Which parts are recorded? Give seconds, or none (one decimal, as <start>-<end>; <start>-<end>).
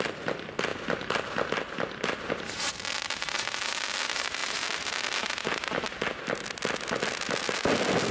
0.0-8.1